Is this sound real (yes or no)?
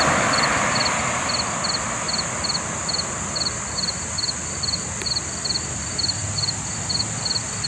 yes